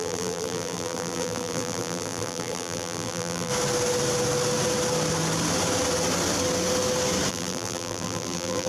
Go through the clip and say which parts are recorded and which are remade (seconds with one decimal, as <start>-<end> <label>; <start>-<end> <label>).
0.0-3.5 remade; 3.5-7.3 recorded; 7.3-8.7 remade